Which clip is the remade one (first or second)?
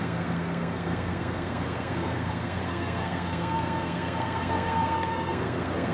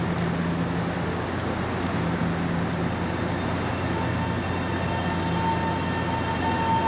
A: first